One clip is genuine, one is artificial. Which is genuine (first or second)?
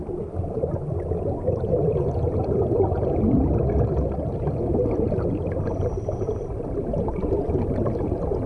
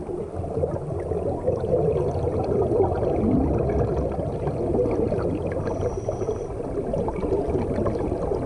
second